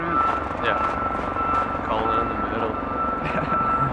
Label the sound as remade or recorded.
recorded